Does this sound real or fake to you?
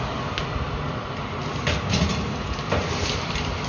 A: real